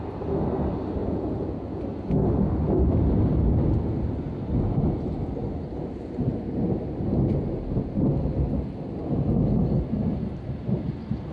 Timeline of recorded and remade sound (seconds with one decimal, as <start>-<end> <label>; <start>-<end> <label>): 0.0-1.0 recorded; 1.0-1.8 remade; 1.8-11.3 recorded